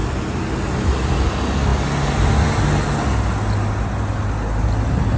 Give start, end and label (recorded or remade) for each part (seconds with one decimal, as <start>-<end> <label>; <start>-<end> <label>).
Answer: 0.0-5.2 recorded